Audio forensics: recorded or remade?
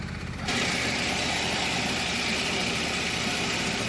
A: recorded